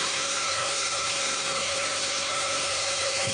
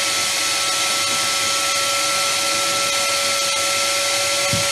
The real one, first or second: second